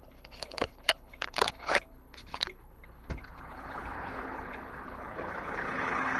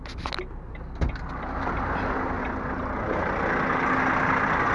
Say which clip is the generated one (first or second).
first